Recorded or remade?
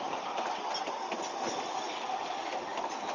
recorded